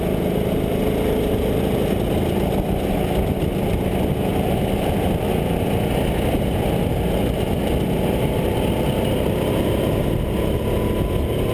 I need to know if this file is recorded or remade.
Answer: recorded